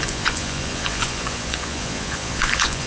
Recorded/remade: remade